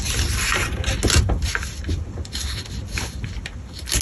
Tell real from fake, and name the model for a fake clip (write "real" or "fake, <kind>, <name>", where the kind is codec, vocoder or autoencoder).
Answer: real